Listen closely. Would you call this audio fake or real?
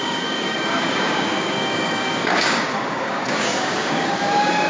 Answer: fake